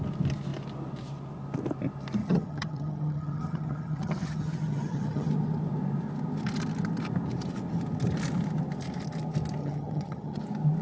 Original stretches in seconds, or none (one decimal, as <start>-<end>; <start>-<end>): 0.0-2.2; 5.3-9.6; 10.4-10.8